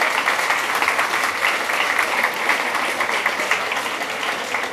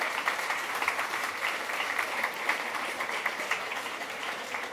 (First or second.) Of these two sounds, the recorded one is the first